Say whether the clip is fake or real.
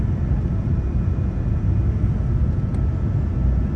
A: real